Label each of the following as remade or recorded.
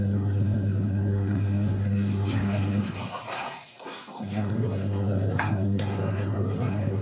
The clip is remade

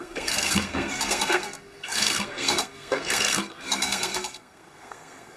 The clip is remade